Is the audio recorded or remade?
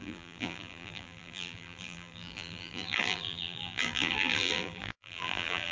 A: remade